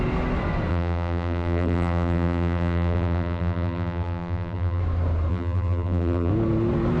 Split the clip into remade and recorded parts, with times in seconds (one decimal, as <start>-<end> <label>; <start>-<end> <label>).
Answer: 0.0-0.7 recorded; 0.7-4.8 remade; 4.8-5.3 recorded; 5.3-6.3 remade; 6.3-7.0 recorded